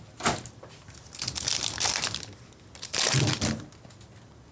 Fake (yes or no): no